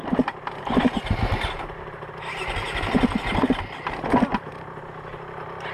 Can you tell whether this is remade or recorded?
recorded